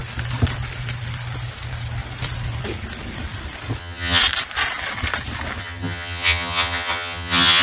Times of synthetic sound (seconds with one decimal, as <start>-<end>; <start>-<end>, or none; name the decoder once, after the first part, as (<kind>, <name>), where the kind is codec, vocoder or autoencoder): 3.8-4.2 (vocoder, HiFi-GAN); 5.6-7.6